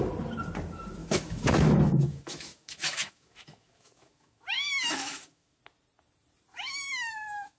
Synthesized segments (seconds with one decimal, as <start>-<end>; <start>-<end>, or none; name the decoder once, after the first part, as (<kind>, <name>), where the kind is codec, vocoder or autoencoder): 1.0-5.6 (autoencoder, DAC-VAE); 6.5-7.6